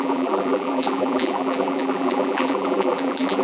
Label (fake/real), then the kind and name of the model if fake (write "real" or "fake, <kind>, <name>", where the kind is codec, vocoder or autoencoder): fake, vocoder, BigVGAN v2